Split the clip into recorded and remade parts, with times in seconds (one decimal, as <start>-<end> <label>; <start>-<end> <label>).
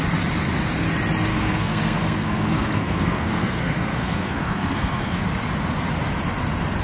0.0-1.3 recorded; 1.3-5.2 remade; 5.2-6.8 recorded